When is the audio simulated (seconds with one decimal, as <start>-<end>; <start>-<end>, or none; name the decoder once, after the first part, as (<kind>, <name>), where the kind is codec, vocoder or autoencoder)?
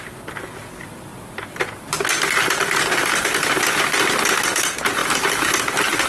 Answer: none